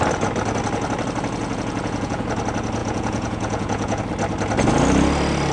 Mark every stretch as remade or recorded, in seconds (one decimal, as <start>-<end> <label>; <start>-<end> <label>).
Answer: 0.0-1.4 recorded; 1.4-2.3 remade; 2.3-2.8 recorded; 2.8-4.0 remade; 4.0-5.5 recorded